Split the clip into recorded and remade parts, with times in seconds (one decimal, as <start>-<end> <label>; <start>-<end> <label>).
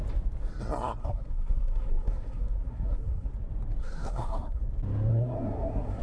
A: 0.0-1.0 recorded; 1.0-3.3 remade; 3.3-3.8 recorded; 3.8-4.6 remade; 4.6-5.1 recorded; 5.1-6.0 remade